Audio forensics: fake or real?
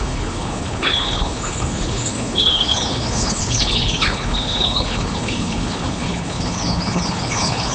fake